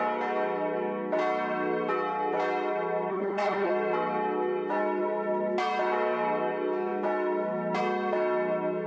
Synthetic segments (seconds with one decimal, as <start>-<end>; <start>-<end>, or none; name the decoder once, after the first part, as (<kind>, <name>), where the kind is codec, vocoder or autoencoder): 3.1-3.7 (codec, SNAC)